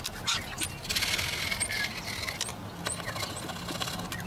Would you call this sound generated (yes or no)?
no